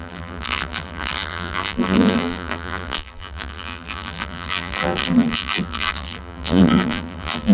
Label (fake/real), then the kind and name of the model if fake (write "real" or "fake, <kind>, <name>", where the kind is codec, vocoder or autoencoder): fake, vocoder, BigVGAN v2